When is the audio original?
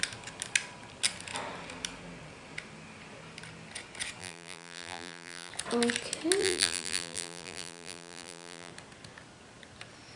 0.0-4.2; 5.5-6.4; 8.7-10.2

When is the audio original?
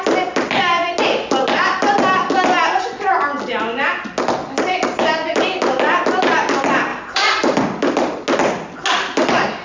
0.0-6.9; 7.6-9.6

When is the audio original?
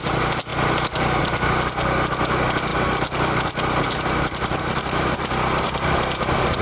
0.0-0.5; 1.2-2.7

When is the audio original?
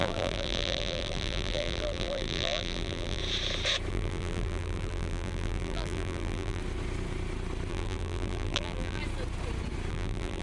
3.2-3.9; 6.6-7.7; 9.0-9.9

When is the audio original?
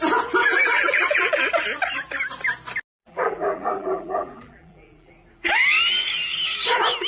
0.0-0.4; 1.4-3.0; 5.1-7.1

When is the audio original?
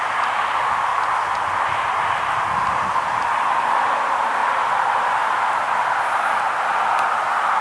0.9-3.1; 4.4-7.1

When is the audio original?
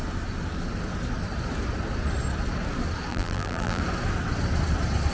0.0-3.1; 3.8-5.1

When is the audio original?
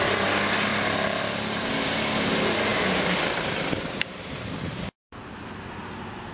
0.0-0.7; 1.7-2.7; 4.5-6.3